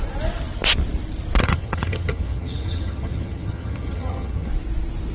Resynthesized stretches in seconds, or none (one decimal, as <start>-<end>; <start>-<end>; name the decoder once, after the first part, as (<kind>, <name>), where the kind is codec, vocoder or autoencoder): 1.4-4.5 (vocoder, HiFi-GAN)